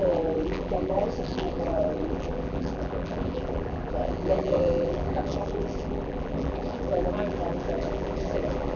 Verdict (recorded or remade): remade